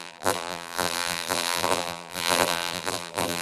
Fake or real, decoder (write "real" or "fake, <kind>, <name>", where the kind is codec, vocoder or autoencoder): fake, vocoder, BigVGAN v2